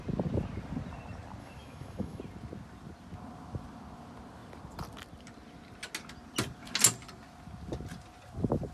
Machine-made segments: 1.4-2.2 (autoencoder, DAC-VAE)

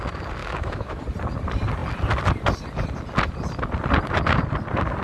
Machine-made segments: 0.4-1.0 (autoencoder, DAC-VAE)

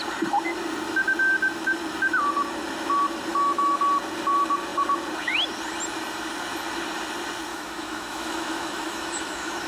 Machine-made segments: 3.3-3.8 (autoencoder, DAC-VAE); 7.5-9.7